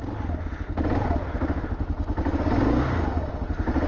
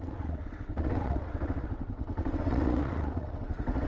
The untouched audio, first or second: first